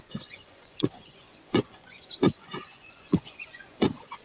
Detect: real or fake fake